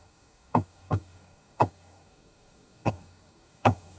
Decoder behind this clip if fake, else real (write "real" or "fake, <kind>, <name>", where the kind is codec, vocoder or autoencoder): fake, codec, DAC